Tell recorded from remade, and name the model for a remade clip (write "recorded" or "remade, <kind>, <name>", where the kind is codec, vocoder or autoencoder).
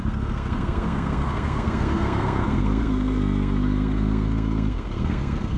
remade, codec, SNAC